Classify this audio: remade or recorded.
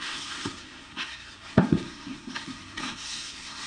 remade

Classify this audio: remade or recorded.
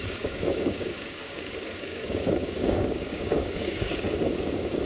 remade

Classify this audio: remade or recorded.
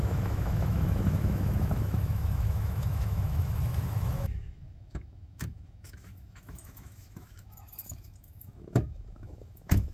remade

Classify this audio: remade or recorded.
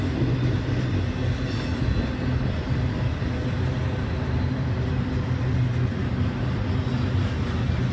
recorded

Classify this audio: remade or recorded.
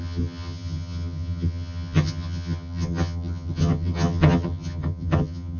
remade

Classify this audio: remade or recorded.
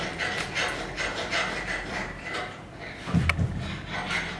recorded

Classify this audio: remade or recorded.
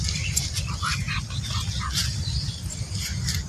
recorded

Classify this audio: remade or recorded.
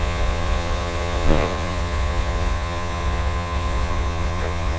remade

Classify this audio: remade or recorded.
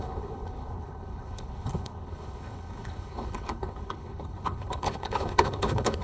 remade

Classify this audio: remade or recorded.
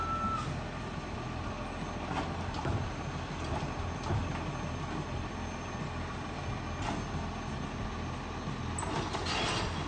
recorded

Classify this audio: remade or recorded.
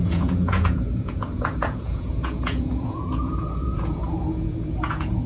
remade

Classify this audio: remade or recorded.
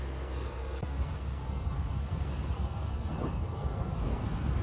remade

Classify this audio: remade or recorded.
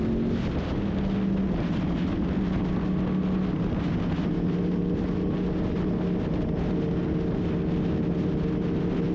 recorded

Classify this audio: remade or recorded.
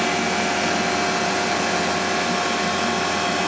recorded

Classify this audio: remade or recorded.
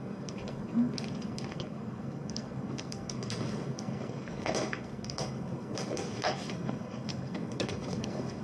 remade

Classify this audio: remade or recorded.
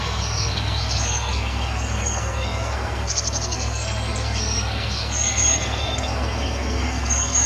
remade